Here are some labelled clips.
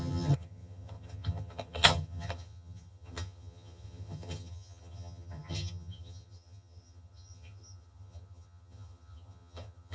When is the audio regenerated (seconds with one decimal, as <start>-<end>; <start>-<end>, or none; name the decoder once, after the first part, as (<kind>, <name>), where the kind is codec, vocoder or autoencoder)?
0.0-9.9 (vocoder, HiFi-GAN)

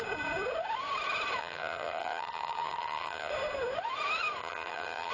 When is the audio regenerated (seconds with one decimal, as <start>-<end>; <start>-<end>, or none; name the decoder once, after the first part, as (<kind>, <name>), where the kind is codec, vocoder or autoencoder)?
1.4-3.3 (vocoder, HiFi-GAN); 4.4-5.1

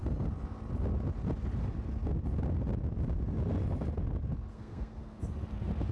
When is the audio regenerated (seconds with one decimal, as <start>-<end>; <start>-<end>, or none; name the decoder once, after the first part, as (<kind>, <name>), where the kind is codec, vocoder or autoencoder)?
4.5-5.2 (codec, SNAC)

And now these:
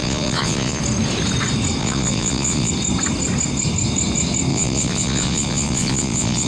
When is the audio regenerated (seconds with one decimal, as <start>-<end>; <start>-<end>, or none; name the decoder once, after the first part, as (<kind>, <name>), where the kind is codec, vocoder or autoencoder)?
0.0-0.8 (vocoder, Vocos); 1.8-2.7; 4.5-6.5

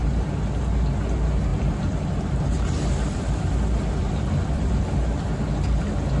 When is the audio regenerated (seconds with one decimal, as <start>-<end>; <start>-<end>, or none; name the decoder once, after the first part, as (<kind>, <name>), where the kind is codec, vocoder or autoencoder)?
1.5-4.8 (vocoder, BigVGAN v2)

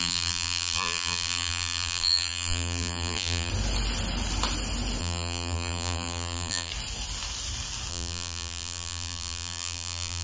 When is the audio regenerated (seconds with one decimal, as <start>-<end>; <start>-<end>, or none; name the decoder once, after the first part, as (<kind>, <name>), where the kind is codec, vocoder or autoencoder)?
0.0-3.5 (vocoder, BigVGAN v2); 5.0-6.7; 7.9-10.2

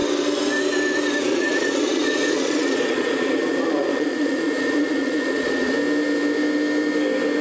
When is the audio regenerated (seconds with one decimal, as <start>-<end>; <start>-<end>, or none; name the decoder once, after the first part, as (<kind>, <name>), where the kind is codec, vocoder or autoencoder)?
1.3-5.7 (vocoder, Vocos)

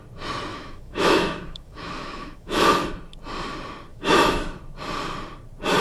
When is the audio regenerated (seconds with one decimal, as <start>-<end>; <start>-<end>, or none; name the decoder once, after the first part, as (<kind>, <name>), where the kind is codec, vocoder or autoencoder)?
0.5-2.6 (autoencoder, DAC-VAE); 3.9-4.6